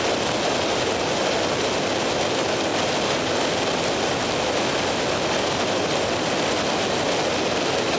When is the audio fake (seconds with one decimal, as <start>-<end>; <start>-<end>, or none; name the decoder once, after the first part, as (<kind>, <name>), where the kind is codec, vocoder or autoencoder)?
none